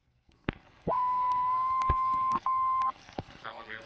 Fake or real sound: fake